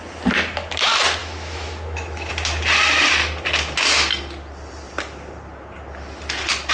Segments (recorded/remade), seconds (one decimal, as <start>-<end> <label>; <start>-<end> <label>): 0.0-1.2 recorded; 1.2-2.3 remade; 2.3-6.7 recorded